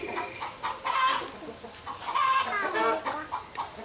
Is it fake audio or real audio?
real